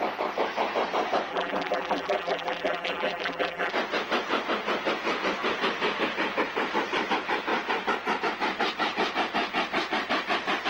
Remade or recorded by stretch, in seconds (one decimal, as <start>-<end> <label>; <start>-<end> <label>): 0.0-1.3 recorded; 1.3-3.7 remade; 3.7-10.7 recorded

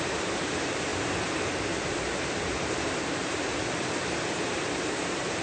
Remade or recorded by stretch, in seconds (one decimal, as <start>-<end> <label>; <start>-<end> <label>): 0.0-3.5 remade; 3.5-4.2 recorded; 4.2-5.4 remade

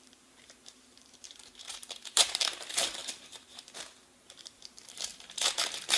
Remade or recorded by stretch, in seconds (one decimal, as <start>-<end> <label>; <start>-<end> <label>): 0.0-6.0 remade

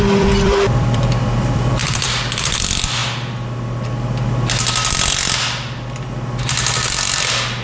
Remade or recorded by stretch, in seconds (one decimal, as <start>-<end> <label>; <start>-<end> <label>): 0.0-3.0 remade; 3.0-6.7 recorded; 6.7-7.6 remade

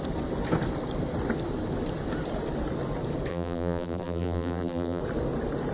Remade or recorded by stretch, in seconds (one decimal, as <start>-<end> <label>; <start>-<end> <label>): 0.0-3.3 recorded; 3.3-5.0 remade; 5.0-5.7 recorded

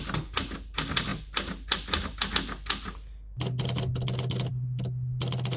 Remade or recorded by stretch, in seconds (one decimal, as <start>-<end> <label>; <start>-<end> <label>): 0.0-5.6 recorded